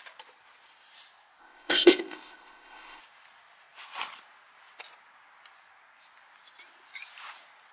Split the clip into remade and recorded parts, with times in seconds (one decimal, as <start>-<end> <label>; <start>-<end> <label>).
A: 0.0-1.4 recorded; 1.4-3.0 remade; 3.0-7.7 recorded